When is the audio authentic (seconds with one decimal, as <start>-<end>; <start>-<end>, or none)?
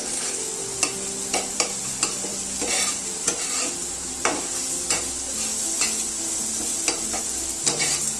0.0-2.3; 4.5-8.2